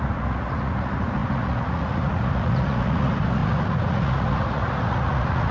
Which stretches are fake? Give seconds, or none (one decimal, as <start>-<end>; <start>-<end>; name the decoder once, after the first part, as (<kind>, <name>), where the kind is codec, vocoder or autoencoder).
0.0-5.5 (vocoder, Vocos)